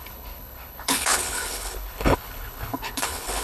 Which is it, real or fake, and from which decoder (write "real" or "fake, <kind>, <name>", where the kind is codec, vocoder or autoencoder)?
fake, codec, HILCodec